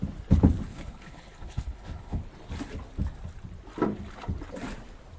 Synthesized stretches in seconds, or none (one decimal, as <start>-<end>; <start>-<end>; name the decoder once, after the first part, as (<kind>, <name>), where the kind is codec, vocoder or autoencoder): 0.7-2.2 (codec, HILCodec)